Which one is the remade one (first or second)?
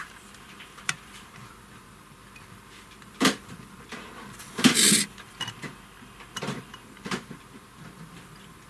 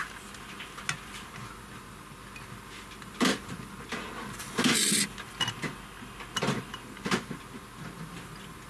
first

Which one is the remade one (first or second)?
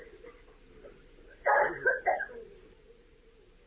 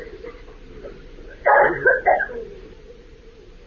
second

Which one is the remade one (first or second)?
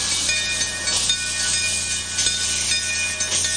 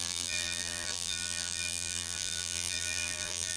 second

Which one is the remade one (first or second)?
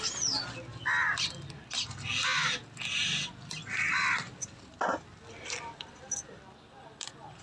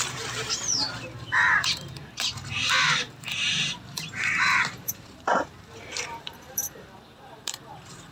second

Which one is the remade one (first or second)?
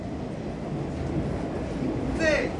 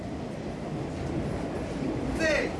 second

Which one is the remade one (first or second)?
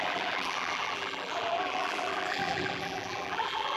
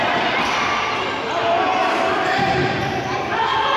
first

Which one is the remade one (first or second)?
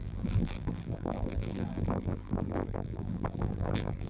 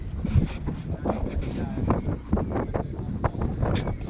first